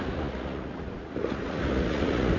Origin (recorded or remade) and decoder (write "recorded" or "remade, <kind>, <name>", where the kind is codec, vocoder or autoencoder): remade, vocoder, Vocos